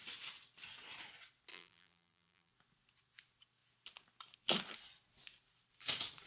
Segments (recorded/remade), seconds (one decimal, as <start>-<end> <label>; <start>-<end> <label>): 0.0-1.5 recorded; 1.5-2.5 remade; 2.5-6.3 recorded